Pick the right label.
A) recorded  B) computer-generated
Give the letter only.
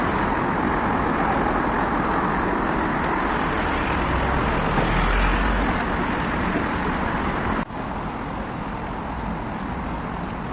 A